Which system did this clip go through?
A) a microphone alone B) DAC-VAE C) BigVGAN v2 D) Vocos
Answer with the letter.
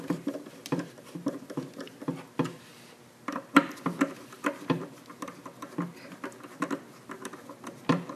C